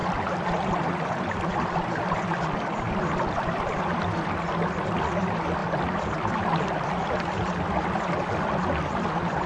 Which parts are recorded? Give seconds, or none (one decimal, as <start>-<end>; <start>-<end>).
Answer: 3.8-9.5